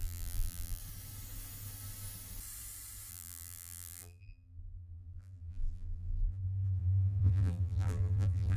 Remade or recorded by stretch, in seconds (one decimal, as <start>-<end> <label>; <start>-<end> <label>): 0.0-0.8 remade; 0.8-3.1 recorded; 3.1-8.6 remade